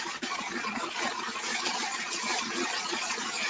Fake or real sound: fake